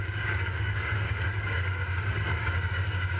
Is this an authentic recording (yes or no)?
no